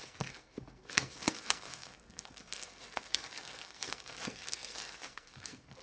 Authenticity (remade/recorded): remade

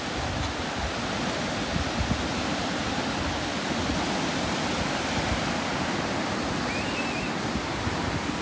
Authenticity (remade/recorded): recorded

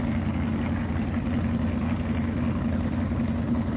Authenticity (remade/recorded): recorded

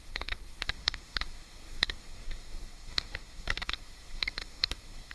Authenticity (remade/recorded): remade